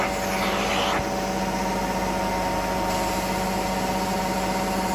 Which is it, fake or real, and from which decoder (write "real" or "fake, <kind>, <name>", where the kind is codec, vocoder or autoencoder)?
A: real